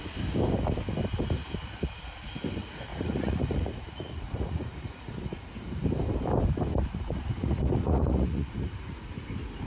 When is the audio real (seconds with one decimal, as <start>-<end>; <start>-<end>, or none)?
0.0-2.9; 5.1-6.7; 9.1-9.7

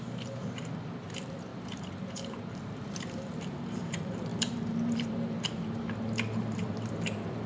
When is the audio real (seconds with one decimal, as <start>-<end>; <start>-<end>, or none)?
none

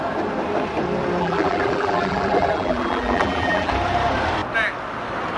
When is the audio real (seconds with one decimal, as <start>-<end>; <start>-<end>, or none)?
0.0-1.2; 3.7-5.4